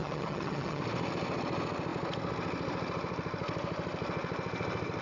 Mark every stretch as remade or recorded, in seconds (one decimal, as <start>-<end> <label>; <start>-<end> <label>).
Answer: 0.0-0.8 remade; 0.8-5.0 recorded